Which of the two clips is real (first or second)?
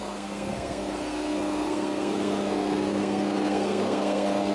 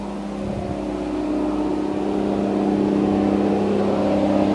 second